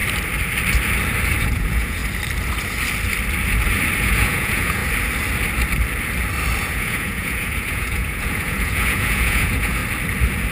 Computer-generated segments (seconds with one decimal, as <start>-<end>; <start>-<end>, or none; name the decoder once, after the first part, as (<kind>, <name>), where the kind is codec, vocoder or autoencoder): 1.4-2.0 (vocoder, Vocos); 4.0-4.8; 6.6-9.8